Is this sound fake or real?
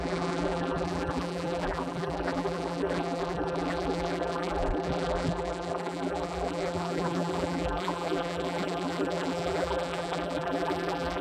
fake